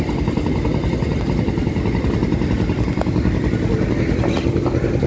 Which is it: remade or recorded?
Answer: recorded